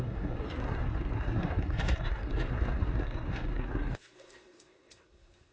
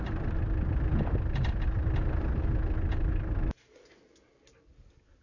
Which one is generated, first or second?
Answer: first